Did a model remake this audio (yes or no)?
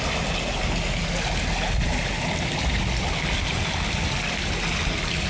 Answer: no